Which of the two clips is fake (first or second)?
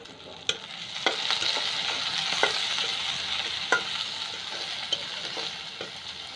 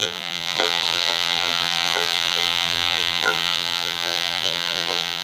second